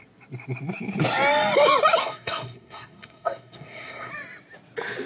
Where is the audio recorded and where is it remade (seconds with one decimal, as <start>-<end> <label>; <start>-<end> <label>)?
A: 0.0-2.0 recorded; 2.0-4.1 remade; 4.1-5.1 recorded